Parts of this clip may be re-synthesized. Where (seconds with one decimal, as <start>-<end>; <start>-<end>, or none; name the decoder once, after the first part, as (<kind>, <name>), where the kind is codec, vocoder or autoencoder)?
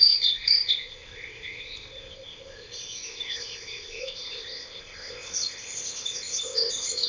0.0-7.1 (codec, ZipCodec)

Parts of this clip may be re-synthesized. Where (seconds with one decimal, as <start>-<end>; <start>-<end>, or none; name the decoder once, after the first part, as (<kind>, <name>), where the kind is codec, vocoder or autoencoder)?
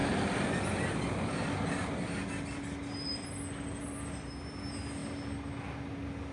none